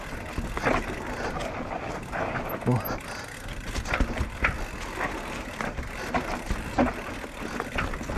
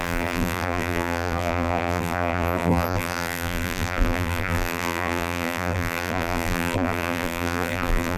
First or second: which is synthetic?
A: second